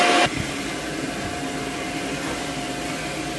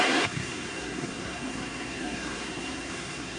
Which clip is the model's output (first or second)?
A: second